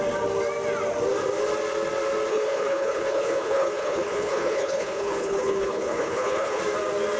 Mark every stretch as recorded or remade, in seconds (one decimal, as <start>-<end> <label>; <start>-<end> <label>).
0.0-2.3 recorded; 2.3-6.6 remade; 6.6-7.2 recorded